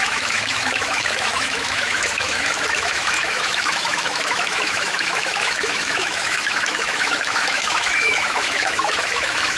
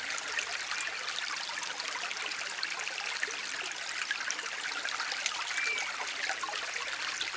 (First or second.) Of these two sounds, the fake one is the first